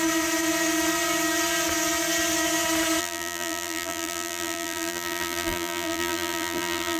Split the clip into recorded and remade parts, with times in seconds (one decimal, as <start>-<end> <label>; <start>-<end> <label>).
0.0-3.0 recorded; 3.0-7.0 remade